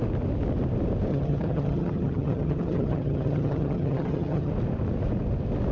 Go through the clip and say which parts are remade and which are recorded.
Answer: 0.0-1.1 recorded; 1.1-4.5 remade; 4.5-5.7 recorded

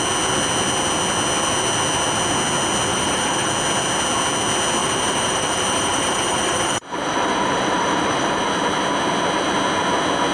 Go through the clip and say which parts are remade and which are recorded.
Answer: 0.0-2.9 recorded; 2.9-3.5 remade; 3.5-4.8 recorded; 4.8-8.4 remade; 8.4-10.3 recorded